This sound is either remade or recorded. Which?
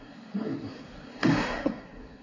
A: remade